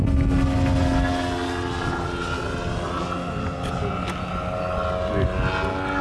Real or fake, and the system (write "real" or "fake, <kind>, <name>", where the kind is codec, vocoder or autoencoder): real